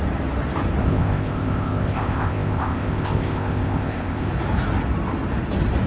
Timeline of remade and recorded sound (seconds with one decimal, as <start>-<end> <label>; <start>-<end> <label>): 0.0-0.8 recorded; 0.8-4.3 remade; 4.3-5.9 recorded